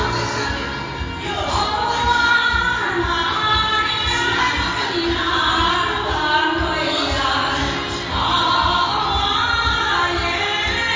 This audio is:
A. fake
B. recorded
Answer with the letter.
B